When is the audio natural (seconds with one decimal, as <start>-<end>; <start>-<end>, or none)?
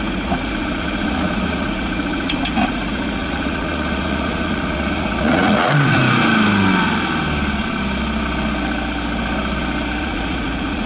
6.0-10.0